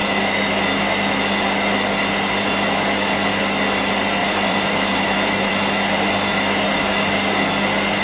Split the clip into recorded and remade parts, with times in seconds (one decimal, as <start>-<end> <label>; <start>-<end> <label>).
0.0-4.2 recorded; 4.2-5.5 remade; 5.5-8.0 recorded